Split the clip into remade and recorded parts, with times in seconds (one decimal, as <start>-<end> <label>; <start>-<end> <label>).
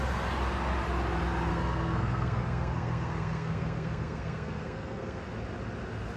0.0-1.5 recorded; 1.5-5.2 remade; 5.2-6.2 recorded